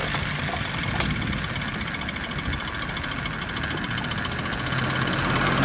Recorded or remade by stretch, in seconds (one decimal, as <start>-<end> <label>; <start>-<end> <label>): 0.0-5.6 recorded